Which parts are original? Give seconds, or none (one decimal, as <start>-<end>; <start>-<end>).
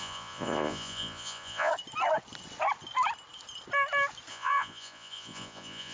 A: 1.7-4.3